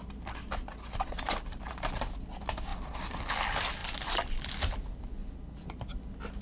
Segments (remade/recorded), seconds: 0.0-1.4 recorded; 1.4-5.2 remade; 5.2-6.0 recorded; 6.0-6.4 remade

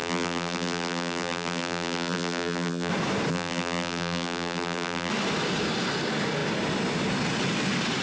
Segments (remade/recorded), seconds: 0.0-2.9 remade; 2.9-3.3 recorded; 3.3-5.1 remade; 5.1-8.0 recorded

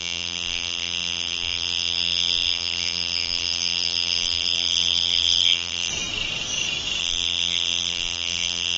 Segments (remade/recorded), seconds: 0.0-5.9 remade; 5.9-7.0 recorded; 7.0-8.8 remade